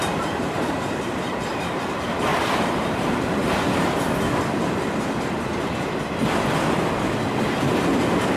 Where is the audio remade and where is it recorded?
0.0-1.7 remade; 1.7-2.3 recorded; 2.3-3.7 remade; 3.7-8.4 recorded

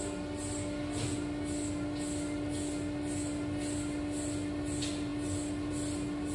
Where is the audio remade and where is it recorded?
0.0-6.3 recorded

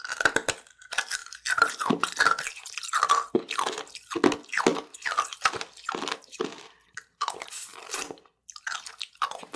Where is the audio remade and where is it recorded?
0.0-9.6 remade

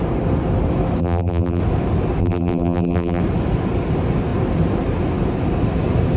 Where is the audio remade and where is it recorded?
0.0-1.0 recorded; 1.0-1.6 remade; 1.6-2.2 recorded; 2.2-3.2 remade; 3.2-6.2 recorded

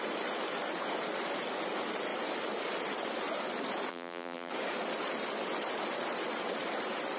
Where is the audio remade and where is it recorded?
0.0-3.9 recorded; 3.9-4.5 remade; 4.5-7.2 recorded